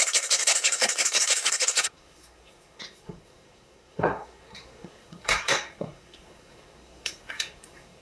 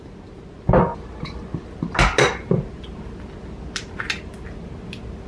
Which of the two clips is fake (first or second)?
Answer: first